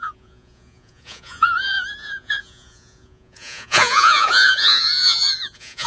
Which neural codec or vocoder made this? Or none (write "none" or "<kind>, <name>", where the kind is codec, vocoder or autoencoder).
vocoder, Vocos